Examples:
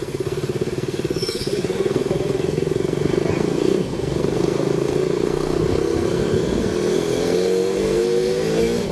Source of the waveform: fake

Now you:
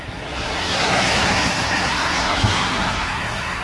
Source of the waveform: fake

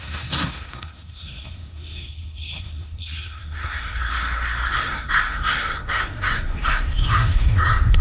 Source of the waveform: fake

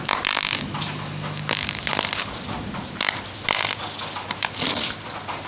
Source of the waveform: real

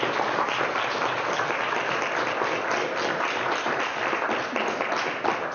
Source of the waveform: real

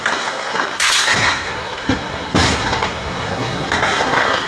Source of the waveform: fake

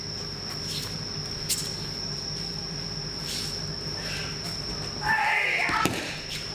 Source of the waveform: real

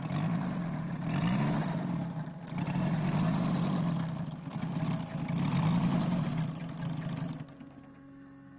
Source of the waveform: real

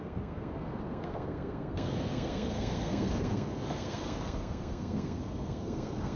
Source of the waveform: fake